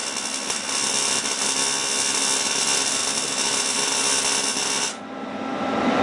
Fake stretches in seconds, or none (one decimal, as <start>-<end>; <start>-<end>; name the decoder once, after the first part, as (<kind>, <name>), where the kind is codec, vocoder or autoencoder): none